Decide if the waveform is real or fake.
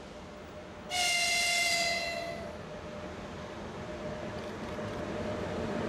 real